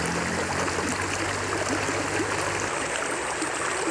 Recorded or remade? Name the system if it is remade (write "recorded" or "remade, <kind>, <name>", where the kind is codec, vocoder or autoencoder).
recorded